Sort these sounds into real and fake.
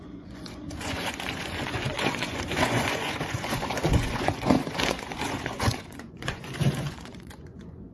fake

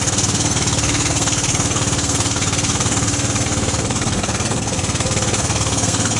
fake